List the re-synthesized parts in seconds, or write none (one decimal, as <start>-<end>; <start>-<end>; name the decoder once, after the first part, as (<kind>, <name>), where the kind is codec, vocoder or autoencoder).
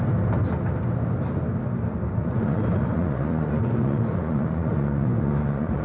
2.2-5.8 (vocoder, Vocos)